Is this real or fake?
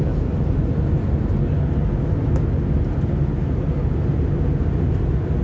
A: real